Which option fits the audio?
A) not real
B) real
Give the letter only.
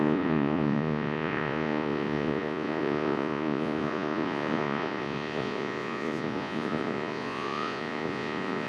A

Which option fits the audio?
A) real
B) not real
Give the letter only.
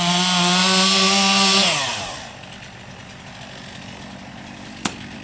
A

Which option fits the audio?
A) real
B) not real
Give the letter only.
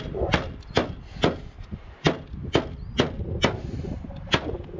A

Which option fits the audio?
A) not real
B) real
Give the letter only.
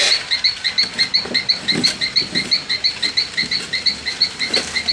B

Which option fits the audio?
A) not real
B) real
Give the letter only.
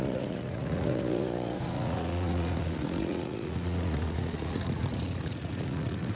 A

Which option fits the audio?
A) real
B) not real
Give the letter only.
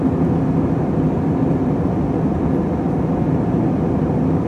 A